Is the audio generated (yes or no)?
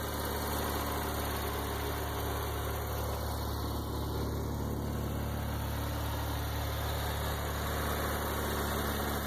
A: no